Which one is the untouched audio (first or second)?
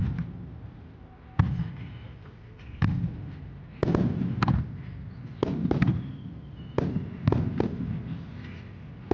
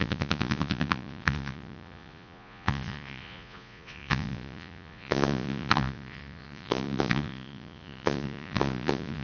first